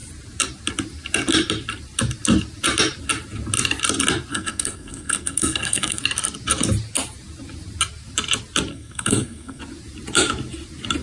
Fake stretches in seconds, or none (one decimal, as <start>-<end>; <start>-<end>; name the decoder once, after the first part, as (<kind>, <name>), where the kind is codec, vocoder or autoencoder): 4.3-6.0 (codec, SNAC); 8.7-9.6